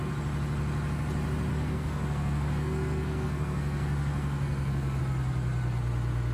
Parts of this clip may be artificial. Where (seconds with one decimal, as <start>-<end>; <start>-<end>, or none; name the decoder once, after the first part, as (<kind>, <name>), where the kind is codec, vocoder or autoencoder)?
1.5-5.0 (codec, SNAC)